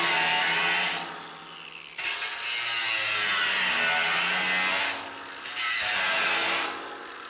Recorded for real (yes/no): yes